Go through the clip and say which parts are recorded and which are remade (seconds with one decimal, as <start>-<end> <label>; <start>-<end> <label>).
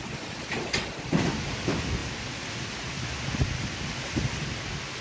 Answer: 0.0-5.0 recorded